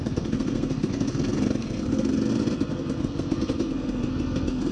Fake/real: fake